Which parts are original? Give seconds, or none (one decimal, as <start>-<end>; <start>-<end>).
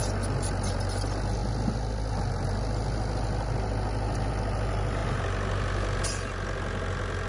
0.0-7.3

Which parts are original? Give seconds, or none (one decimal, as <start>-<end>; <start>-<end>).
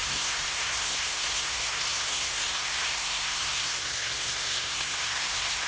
none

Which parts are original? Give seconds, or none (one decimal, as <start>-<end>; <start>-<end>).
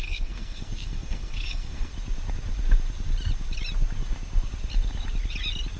1.9-5.8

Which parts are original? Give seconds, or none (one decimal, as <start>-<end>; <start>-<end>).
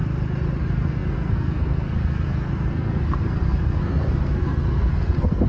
0.0-0.6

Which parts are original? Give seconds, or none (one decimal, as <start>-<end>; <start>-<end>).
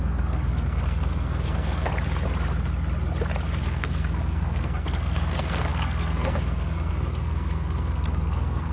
1.9-3.6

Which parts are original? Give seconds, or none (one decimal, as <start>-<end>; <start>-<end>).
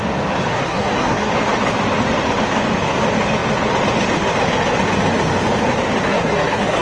0.0-0.5; 1.3-6.1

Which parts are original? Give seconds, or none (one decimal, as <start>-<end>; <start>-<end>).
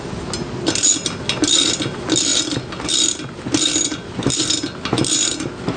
0.0-5.8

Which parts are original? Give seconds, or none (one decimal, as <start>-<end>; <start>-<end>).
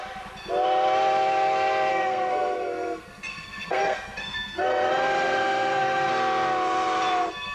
0.0-1.9; 6.1-7.5